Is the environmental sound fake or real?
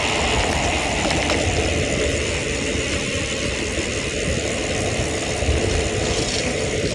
real